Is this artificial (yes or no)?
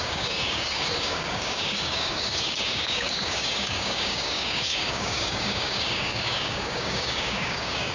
yes